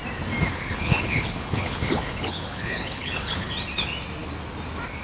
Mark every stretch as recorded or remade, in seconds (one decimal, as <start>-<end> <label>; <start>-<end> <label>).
0.0-0.5 recorded; 0.5-3.5 remade; 3.5-5.0 recorded